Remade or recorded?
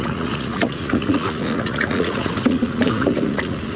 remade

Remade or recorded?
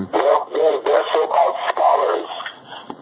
remade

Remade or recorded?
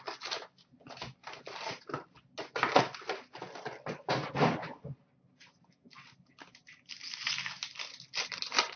recorded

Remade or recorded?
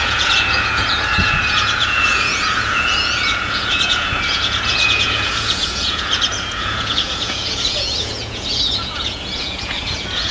remade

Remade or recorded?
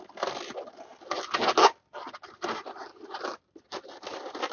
recorded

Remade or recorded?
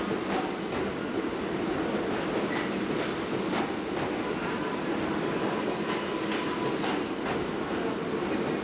recorded